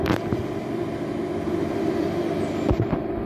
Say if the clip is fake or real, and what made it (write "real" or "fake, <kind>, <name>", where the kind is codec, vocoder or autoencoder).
real